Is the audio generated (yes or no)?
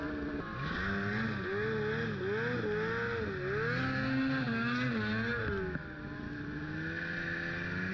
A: no